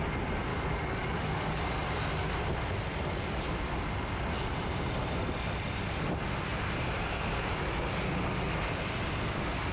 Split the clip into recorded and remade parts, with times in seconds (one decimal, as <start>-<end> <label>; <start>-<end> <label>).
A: 0.0-0.5 recorded; 0.5-1.6 remade; 1.6-9.7 recorded